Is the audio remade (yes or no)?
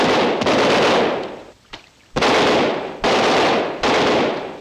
no